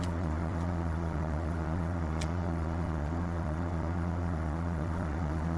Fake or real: fake